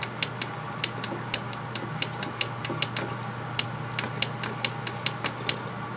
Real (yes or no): yes